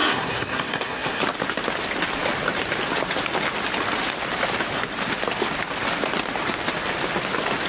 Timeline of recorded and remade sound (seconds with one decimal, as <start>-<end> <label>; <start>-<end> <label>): 0.0-1.2 remade; 1.2-7.7 recorded